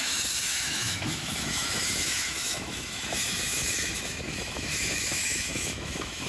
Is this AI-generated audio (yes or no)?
yes